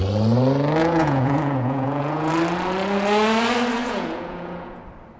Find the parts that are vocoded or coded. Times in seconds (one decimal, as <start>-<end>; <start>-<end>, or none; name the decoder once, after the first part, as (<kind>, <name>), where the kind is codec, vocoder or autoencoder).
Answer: 0.8-2.3 (vocoder, Vocos); 3.8-4.8